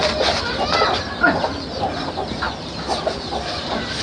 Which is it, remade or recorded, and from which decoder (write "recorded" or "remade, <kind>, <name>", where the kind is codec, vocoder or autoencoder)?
recorded